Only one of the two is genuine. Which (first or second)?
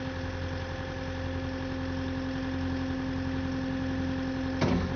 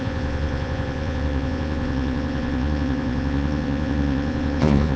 first